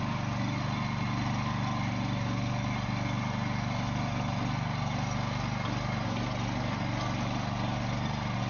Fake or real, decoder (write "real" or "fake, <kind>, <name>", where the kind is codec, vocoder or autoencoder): real